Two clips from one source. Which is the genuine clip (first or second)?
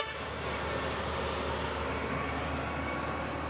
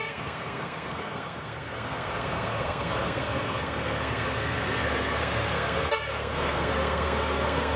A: first